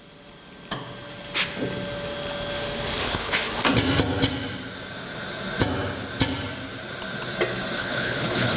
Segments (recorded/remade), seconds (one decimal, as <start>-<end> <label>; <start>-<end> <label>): 0.0-3.0 recorded; 3.0-3.5 remade; 3.5-7.8 recorded; 7.8-8.6 remade